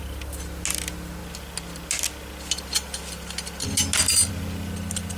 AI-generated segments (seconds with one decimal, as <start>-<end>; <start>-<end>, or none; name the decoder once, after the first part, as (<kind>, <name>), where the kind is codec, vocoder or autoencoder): none